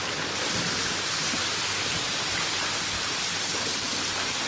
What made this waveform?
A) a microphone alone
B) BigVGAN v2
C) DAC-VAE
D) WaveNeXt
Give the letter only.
B